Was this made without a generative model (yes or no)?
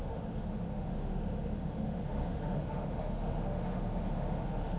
no